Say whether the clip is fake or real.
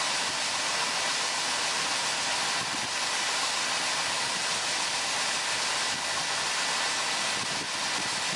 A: real